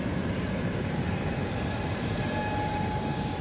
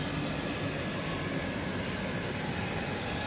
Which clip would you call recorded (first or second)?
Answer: second